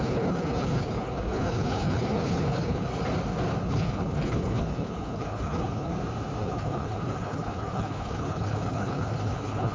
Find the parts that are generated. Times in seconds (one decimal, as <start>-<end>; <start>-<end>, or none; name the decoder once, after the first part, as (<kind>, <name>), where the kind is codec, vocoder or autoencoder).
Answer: 0.0-2.9 (codec, HILCodec); 3.6-5.9; 6.4-9.7